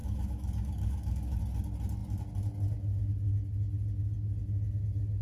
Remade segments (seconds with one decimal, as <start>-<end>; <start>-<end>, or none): 0.0-1.4